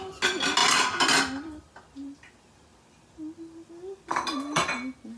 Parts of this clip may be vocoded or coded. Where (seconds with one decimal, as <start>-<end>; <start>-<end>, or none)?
none